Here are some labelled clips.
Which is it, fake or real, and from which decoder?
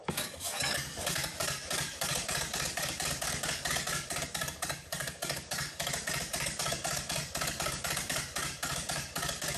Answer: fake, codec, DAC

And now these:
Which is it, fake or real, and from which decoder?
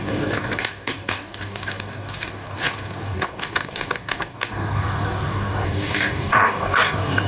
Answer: fake, codec, DAC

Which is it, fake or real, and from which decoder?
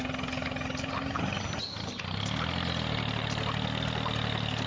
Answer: real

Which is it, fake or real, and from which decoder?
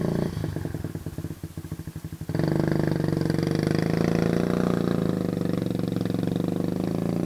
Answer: real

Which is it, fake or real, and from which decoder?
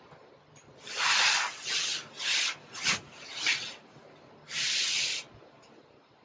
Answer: real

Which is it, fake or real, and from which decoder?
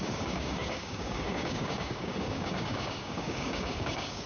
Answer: fake, codec, DAC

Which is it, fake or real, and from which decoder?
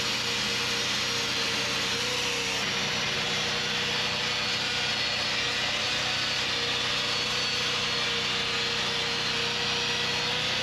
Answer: real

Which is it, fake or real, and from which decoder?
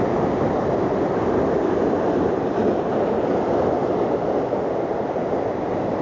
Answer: real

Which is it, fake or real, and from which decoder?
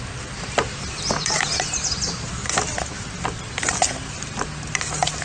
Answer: real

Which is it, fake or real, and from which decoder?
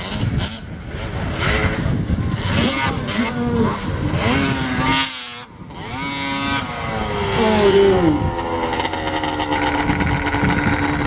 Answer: real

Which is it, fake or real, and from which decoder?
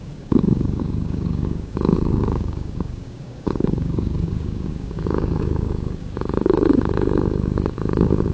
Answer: fake, codec, DAC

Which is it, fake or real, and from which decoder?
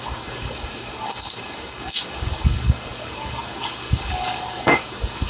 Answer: fake, codec, DAC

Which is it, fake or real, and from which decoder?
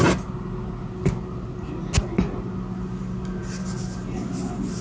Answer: real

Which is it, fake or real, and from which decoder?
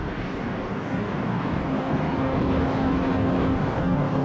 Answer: fake, codec, DAC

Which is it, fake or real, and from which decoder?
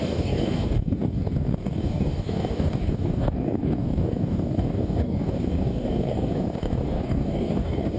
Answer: fake, codec, DAC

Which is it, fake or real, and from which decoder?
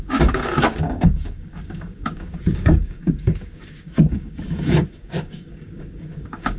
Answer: fake, codec, DAC